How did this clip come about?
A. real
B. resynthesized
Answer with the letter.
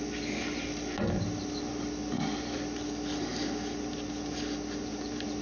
A